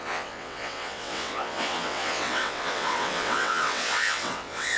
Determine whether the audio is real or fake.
fake